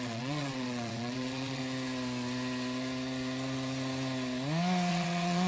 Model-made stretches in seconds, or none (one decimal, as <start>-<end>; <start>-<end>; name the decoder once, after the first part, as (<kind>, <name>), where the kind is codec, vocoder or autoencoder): 0.0-1.6 (vocoder, WaveNeXt); 4.9-5.5